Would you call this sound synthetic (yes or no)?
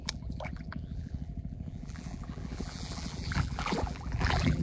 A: yes